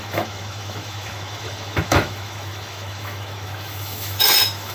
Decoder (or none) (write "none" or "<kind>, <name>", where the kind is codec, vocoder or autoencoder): autoencoder, DAC-VAE